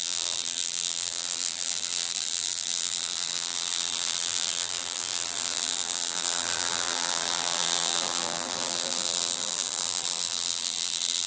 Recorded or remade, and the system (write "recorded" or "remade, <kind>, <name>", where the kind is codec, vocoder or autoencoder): remade, vocoder, BigVGAN v2